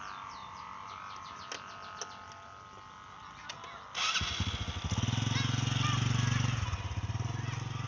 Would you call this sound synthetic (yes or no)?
no